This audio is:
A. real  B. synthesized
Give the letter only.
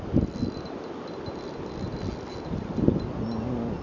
A